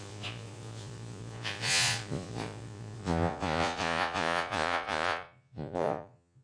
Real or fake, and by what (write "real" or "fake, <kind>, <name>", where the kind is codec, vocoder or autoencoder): fake, vocoder, Vocos